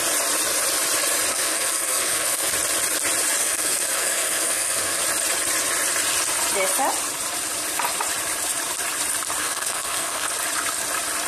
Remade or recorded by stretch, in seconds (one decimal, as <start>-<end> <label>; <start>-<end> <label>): 0.0-1.3 recorded; 1.3-2.5 remade; 2.5-3.4 recorded; 3.4-5.0 remade; 5.0-9.4 recorded; 9.4-10.3 remade; 10.3-11.3 recorded